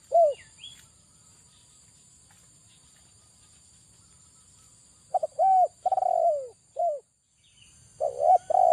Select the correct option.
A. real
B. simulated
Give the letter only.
A